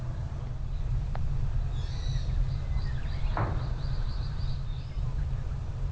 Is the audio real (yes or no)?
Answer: yes